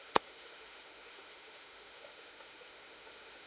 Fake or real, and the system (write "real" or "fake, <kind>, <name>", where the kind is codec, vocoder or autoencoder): fake, autoencoder, DAC-VAE